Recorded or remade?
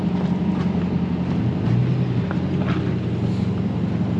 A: recorded